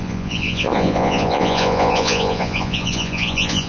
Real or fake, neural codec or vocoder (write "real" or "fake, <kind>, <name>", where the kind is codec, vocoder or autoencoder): fake, vocoder, Vocos